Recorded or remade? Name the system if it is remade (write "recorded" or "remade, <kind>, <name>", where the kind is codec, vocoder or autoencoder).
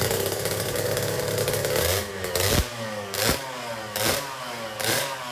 remade, codec, DAC